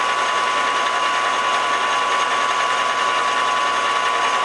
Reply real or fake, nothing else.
real